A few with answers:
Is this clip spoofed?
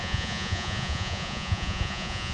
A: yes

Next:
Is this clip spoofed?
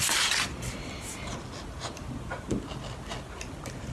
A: no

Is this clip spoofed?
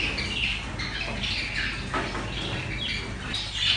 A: no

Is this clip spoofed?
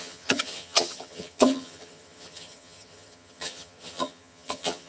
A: yes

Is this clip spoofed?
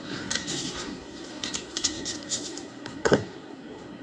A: yes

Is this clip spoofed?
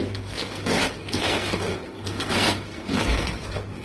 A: yes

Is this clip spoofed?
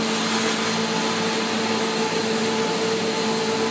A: no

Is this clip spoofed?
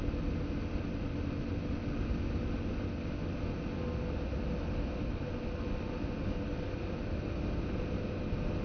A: no